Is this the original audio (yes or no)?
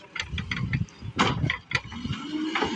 yes